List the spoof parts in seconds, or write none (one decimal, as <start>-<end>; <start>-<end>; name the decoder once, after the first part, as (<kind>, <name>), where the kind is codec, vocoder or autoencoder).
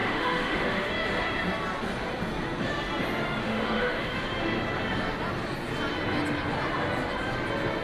0.0-0.9 (autoencoder, DAC-VAE); 3.4-4.1